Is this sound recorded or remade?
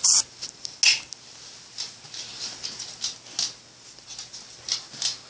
recorded